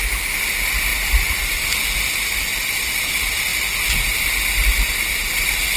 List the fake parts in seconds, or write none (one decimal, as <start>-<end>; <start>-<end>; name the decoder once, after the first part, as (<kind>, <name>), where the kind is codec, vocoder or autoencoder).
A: none

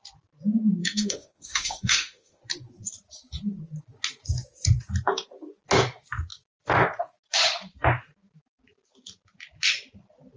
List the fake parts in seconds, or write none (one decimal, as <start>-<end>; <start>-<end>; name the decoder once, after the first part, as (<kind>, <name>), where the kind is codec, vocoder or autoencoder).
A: 0.8-2.4 (autoencoder, DAC-VAE)

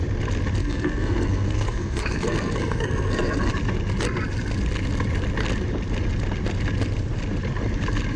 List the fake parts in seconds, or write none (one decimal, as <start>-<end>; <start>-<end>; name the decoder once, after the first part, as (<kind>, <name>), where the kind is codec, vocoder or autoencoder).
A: 0.6-3.5 (codec, SNAC)

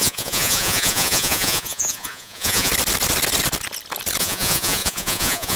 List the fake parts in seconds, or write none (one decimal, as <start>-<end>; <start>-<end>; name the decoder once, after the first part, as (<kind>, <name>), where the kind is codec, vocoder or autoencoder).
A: 0.0-2.7 (vocoder, Vocos); 4.2-5.6

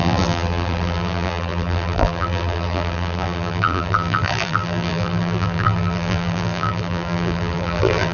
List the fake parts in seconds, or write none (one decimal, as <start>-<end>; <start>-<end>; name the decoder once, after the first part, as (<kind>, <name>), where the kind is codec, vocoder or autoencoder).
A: 0.0-8.1 (vocoder, BigVGAN v2)

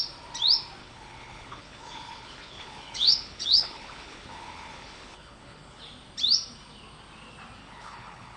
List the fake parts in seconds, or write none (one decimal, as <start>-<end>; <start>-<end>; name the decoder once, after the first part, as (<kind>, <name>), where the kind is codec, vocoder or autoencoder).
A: 0.8-5.8 (codec, HILCodec); 7.6-8.4

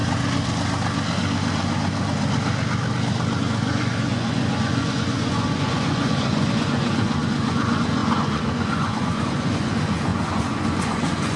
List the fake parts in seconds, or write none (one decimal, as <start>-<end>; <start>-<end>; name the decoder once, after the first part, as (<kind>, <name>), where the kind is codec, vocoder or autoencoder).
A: 3.4-11.4 (vocoder, Vocos)